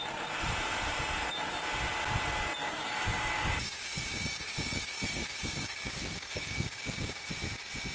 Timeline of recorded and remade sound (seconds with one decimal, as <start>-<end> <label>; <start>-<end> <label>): 0.0-2.6 recorded; 2.6-7.3 remade; 7.3-7.9 recorded